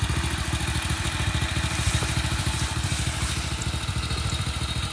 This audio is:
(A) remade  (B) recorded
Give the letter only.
B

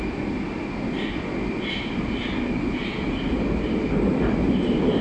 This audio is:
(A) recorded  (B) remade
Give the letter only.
A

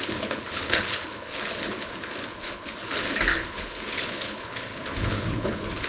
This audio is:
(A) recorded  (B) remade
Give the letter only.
B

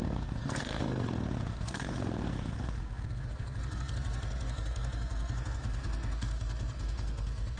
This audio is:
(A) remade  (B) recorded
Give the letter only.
A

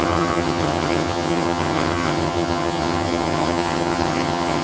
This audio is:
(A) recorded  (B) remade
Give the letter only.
B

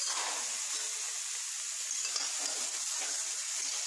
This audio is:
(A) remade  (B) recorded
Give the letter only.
B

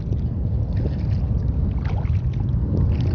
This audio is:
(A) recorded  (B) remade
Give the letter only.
A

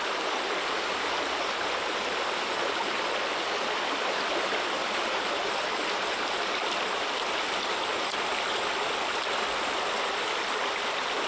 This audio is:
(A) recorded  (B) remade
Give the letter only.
A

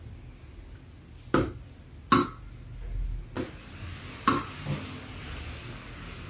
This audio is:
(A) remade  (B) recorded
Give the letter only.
B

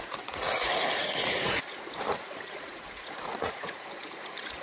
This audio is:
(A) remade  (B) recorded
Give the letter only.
A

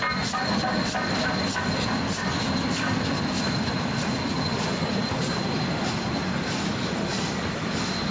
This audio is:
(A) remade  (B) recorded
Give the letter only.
B